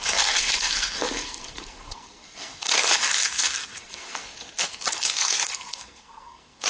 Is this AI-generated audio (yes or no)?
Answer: yes